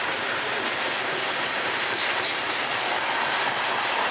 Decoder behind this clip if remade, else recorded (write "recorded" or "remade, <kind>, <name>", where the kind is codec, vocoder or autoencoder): recorded